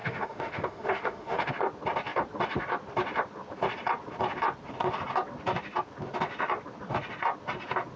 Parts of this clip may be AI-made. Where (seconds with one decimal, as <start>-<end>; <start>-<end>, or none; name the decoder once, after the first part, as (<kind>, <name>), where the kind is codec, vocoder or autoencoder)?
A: 0.0-1.5 (autoencoder, DAC-VAE)